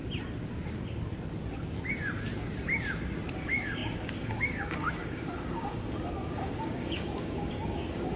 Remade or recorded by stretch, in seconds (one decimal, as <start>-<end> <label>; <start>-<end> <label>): 0.0-3.3 recorded; 3.3-8.2 remade